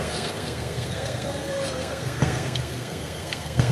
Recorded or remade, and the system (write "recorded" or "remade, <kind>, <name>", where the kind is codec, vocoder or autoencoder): remade, codec, SNAC